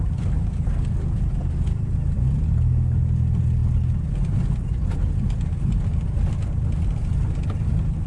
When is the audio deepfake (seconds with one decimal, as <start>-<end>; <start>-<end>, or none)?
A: none